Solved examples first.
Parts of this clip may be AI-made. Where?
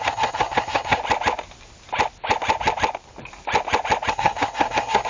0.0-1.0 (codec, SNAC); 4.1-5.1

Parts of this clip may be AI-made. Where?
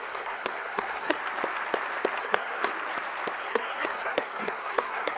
0.0-1.2 (codec, SNAC); 2.2-2.7; 3.4-5.2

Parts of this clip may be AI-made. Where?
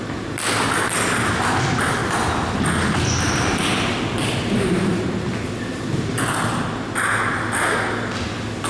none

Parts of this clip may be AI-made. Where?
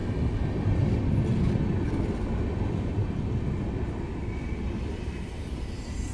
none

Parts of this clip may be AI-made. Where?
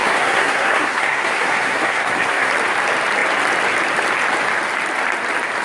0.0-2.5 (codec, SNAC)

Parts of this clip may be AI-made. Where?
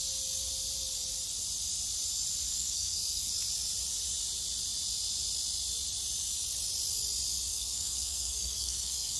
2.5-3.3 (codec, SNAC); 7.5-9.2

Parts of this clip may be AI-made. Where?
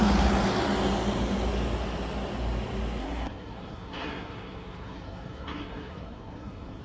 3.0-6.8 (codec, SNAC)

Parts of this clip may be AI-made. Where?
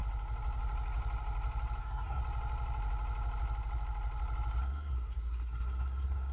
1.8-2.2 (codec, SNAC); 4.6-6.3